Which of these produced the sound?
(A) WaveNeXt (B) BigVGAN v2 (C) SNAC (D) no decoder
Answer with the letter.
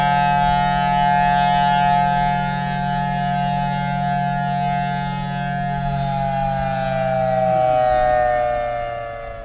D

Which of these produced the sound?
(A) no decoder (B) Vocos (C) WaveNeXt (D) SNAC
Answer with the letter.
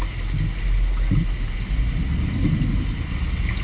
A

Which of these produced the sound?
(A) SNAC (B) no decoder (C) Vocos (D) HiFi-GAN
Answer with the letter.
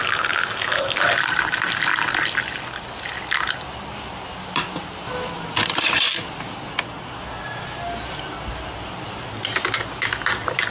B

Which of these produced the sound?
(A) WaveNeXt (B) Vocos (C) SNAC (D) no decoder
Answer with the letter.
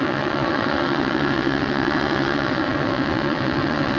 A